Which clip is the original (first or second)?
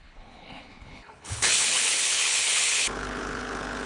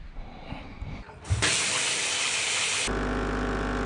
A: second